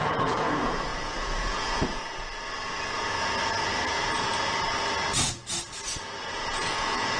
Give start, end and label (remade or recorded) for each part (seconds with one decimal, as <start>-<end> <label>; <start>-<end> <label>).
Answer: 0.0-2.0 remade; 2.0-6.3 recorded; 6.3-7.2 remade